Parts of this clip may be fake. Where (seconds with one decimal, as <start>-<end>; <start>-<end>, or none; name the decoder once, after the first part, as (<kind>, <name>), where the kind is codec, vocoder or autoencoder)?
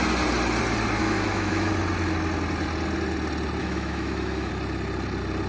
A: 1.0-1.7 (autoencoder, DAC-VAE); 3.6-4.5